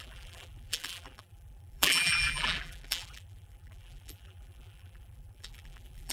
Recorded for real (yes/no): no